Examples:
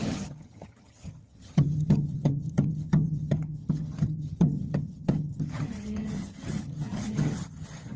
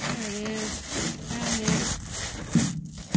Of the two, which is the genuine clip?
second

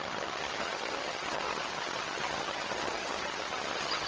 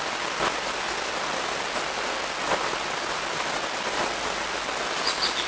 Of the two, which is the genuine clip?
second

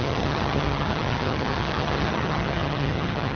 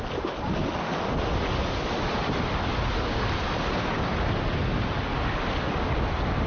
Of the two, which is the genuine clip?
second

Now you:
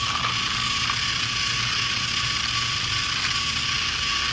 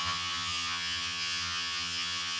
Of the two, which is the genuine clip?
first